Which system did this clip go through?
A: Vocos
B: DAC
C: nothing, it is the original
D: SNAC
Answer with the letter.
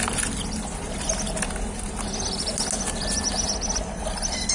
C